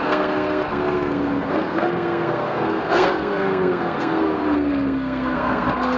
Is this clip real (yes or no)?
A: no